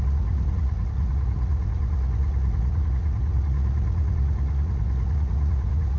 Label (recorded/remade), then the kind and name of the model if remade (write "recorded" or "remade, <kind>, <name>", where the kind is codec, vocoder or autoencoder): remade, vocoder, Vocos